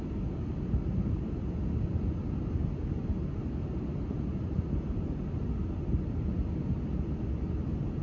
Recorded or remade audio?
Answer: recorded